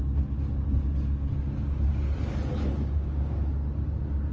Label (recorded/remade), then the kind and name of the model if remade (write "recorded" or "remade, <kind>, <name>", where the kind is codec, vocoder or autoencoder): recorded